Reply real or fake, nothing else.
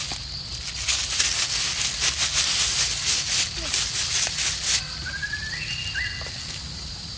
real